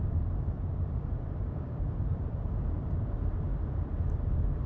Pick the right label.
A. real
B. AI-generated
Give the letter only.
B